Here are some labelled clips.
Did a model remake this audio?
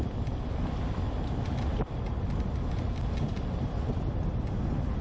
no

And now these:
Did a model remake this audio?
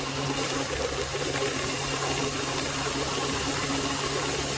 no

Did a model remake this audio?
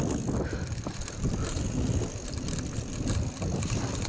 yes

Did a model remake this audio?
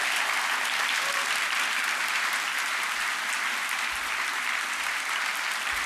no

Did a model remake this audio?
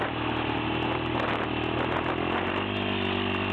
no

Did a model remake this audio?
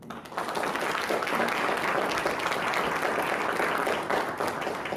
no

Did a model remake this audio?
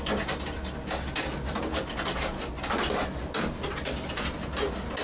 no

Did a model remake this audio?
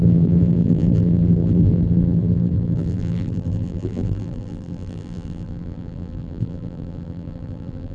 yes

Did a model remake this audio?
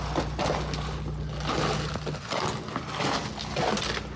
no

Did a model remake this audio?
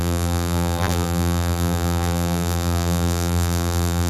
yes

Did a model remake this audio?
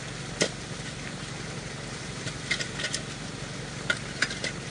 no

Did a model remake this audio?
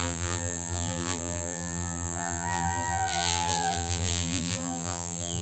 yes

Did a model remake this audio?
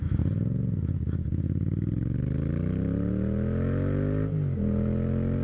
no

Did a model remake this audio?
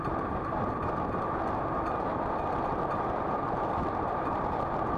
no